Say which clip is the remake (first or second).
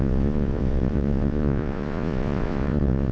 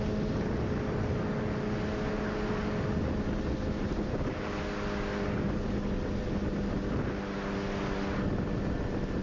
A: first